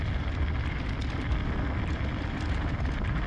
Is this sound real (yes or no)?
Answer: yes